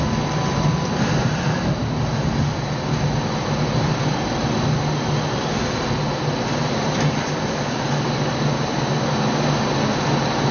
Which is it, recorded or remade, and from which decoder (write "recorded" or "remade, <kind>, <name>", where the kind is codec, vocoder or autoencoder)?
recorded